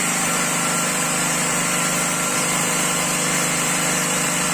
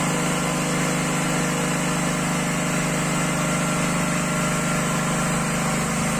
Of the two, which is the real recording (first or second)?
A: second